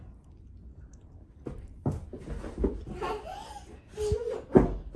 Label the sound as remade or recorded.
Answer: recorded